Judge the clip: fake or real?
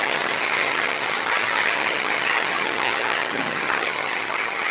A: fake